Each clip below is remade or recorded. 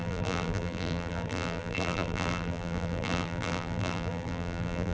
remade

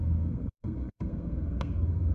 remade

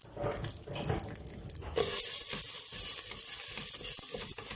recorded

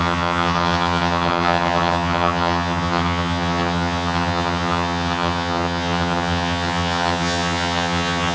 remade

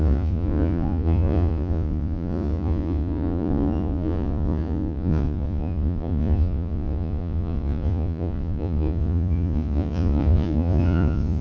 remade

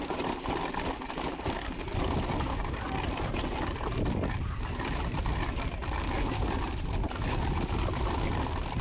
recorded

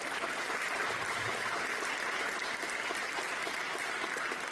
recorded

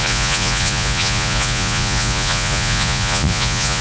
remade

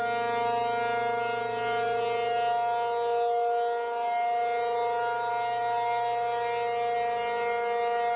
recorded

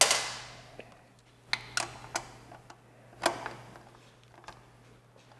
recorded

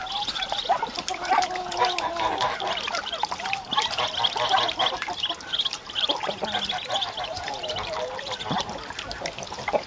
recorded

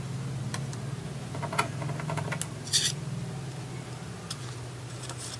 recorded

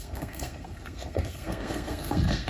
remade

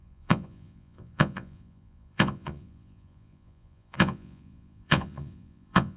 remade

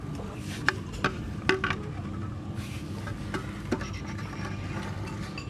recorded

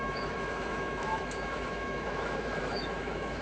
remade